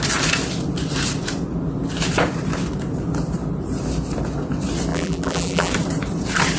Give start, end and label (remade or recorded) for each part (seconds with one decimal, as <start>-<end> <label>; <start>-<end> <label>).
0.0-4.9 recorded; 4.9-5.7 remade; 5.7-6.6 recorded